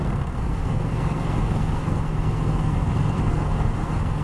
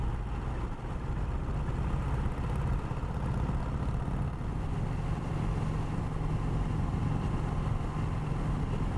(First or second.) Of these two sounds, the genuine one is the second